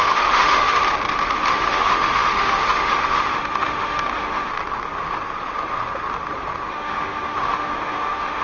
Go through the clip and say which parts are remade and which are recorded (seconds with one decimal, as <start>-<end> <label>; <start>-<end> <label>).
0.0-0.8 remade; 0.8-1.5 recorded; 1.5-4.5 remade; 4.5-6.7 recorded; 6.7-8.4 remade